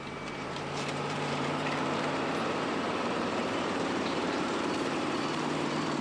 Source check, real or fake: fake